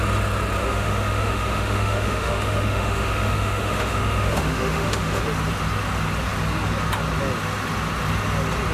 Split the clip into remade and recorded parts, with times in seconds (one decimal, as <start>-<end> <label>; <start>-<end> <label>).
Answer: 0.0-0.6 recorded; 0.6-5.2 remade; 5.2-8.7 recorded